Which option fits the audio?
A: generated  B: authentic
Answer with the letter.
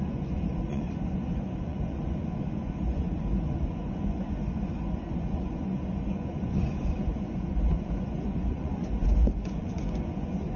A